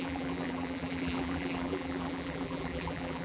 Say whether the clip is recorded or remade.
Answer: remade